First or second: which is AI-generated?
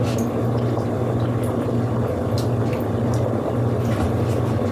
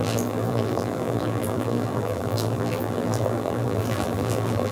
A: second